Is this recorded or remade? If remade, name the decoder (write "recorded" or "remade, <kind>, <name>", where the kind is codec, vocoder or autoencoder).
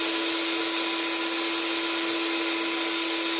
recorded